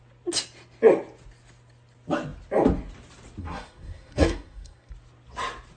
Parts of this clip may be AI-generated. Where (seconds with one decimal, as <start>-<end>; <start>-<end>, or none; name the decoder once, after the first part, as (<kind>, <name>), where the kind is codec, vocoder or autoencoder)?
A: 3.4-4.9 (codec, SNAC)